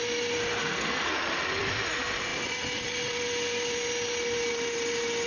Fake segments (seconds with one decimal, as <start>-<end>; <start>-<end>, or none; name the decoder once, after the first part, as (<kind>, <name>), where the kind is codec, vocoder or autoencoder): 0.6-1.1 (codec, SNAC)